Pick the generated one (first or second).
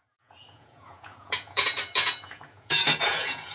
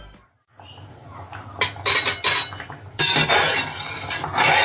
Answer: first